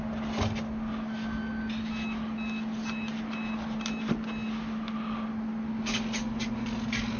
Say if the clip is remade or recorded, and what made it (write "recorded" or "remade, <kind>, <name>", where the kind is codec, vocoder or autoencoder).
recorded